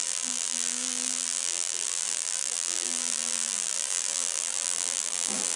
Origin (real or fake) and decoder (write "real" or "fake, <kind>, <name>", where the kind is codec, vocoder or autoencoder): fake, vocoder, BigVGAN v2